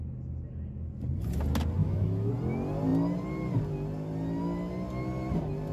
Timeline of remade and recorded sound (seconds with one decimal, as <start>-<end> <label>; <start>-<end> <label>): 0.0-1.8 recorded; 1.8-2.3 remade; 2.3-5.7 recorded